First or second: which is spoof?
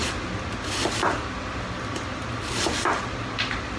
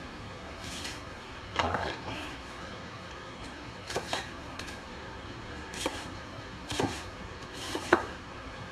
second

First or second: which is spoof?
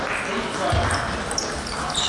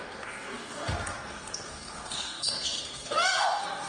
second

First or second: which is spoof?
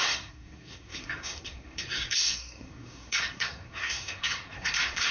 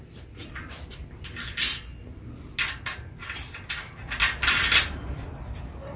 first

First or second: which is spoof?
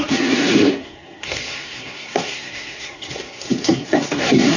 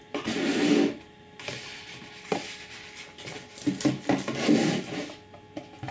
first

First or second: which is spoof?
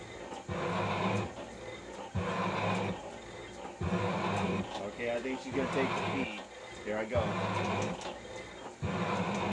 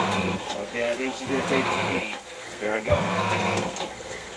second